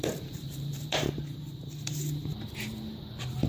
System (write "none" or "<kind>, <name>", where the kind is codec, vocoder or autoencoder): vocoder, BigVGAN v2